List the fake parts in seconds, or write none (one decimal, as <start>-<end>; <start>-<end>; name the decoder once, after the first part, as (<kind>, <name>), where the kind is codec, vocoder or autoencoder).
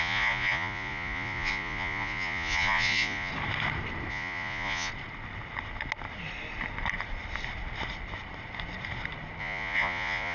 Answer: 0.0-3.3 (vocoder, Vocos); 4.1-4.9; 9.4-10.3